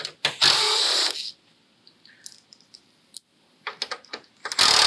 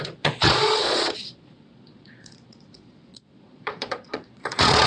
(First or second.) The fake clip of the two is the second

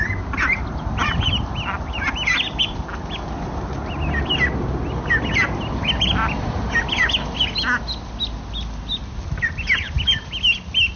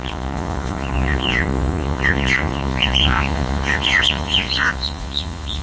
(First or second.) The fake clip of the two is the second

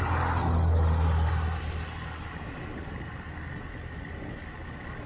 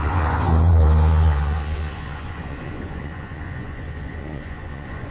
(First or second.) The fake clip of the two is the second